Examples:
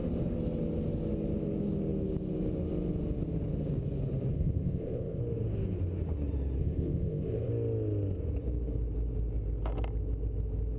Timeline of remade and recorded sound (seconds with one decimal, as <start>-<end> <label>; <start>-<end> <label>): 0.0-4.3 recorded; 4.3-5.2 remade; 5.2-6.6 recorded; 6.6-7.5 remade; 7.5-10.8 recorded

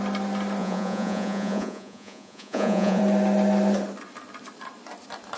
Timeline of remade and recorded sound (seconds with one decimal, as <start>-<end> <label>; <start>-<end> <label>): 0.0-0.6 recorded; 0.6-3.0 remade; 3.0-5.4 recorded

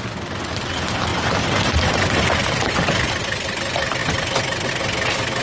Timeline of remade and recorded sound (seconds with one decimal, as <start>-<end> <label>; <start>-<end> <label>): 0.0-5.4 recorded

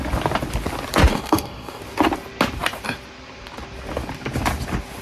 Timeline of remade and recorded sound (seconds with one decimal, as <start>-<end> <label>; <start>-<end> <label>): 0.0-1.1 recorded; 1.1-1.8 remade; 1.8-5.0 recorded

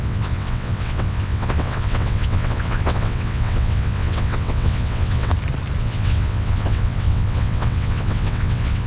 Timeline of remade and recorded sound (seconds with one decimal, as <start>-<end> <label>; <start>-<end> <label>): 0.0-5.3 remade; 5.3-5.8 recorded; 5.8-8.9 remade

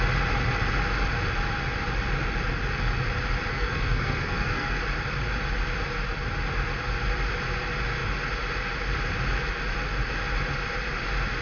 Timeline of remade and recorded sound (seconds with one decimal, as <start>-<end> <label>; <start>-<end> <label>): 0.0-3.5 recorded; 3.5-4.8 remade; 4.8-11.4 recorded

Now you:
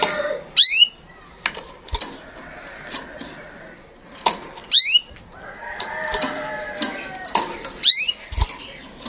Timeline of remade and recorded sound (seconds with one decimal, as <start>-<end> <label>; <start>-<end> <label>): 0.0-9.1 recorded